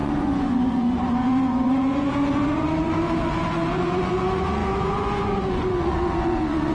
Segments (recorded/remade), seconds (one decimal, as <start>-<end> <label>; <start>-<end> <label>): 0.0-6.7 remade

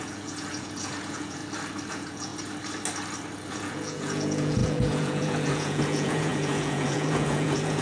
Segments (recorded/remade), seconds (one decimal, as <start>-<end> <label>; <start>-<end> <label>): 0.0-1.4 remade; 1.4-1.9 recorded; 1.9-2.3 remade; 2.3-3.5 recorded; 3.5-7.8 remade